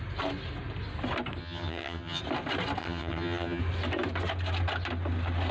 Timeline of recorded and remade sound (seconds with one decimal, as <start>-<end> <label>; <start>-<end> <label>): 0.0-1.4 recorded; 1.4-2.2 remade; 2.2-2.8 recorded; 2.8-3.6 remade; 3.6-5.5 recorded